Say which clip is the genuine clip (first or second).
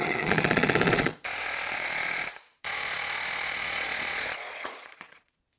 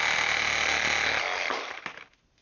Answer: second